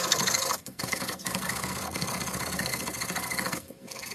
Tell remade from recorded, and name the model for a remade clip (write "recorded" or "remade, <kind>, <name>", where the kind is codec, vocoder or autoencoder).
remade, codec, SNAC